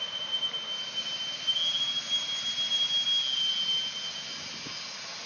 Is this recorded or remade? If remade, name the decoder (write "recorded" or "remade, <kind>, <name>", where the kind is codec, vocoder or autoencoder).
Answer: recorded